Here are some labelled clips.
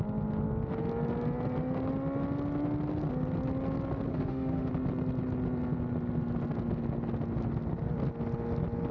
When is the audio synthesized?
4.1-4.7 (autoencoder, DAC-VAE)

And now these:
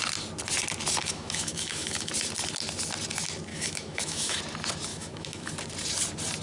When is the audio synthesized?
1.0-2.1 (autoencoder, DAC-VAE); 3.5-4.4; 4.9-5.5

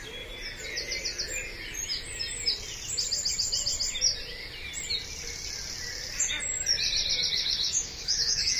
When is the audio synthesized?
7.3-8.6 (autoencoder, DAC-VAE)

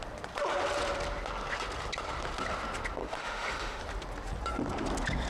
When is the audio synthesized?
3.0-3.8 (autoencoder, DAC-VAE)

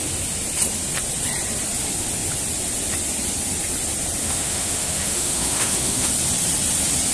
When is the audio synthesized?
4.2-6.1 (autoencoder, DAC-VAE)

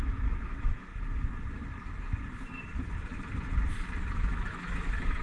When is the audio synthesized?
0.0-0.9 (autoencoder, DAC-VAE); 4.0-5.2

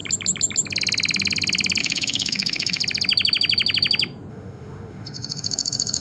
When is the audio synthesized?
1.8-2.8 (autoencoder, DAC-VAE); 4.3-6.0

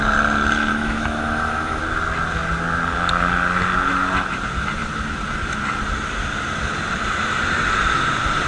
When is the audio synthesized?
0.7-1.8 (autoencoder, DAC-VAE)